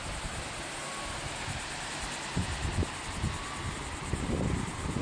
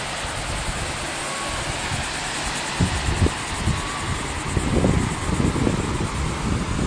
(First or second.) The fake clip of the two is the first